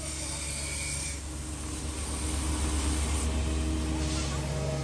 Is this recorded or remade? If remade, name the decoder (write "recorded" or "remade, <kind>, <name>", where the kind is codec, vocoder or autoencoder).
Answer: recorded